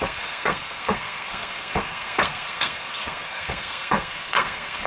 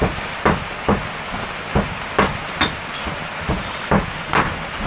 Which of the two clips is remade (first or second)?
first